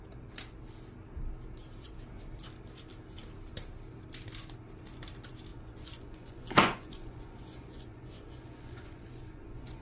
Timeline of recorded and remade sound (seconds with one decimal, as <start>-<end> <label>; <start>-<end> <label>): 0.0-5.5 recorded; 5.5-9.8 remade